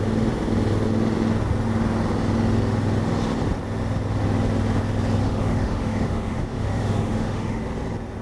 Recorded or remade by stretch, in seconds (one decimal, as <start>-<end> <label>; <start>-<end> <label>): 0.0-5.2 recorded; 5.2-7.6 remade; 7.6-8.2 recorded